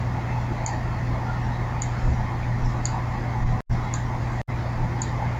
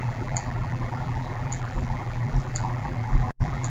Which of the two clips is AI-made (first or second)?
second